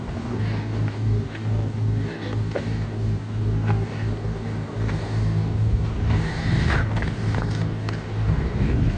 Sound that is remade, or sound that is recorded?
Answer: remade